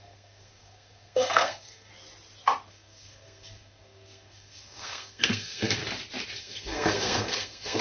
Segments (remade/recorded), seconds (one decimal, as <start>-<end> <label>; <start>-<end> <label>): 0.0-1.9 remade; 1.9-2.7 recorded; 2.7-5.8 remade; 5.8-6.4 recorded; 6.4-7.8 remade